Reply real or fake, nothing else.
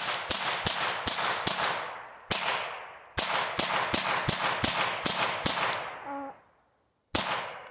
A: real